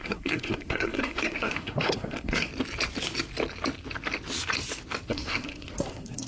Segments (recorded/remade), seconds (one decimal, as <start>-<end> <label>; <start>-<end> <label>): 0.0-2.5 remade; 2.5-5.1 recorded; 5.1-6.3 remade